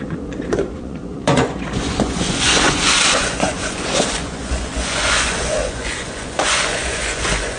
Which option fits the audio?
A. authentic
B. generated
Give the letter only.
B